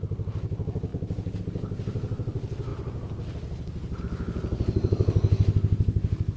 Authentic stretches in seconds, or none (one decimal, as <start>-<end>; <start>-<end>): 0.0-0.9; 1.4-6.4